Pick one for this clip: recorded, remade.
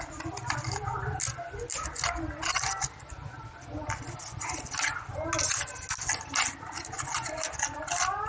recorded